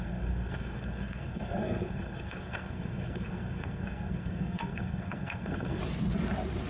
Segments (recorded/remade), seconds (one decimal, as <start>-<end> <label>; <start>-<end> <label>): 0.0-5.8 remade; 5.8-6.7 recorded